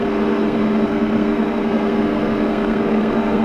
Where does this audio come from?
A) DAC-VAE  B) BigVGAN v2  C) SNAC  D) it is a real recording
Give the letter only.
C